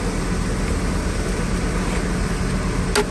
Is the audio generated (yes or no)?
no